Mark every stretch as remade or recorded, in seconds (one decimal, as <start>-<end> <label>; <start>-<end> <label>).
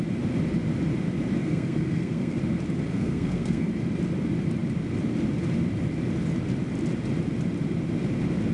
0.0-1.4 recorded; 1.4-2.4 remade; 2.4-2.9 recorded; 2.9-3.7 remade; 3.7-8.5 recorded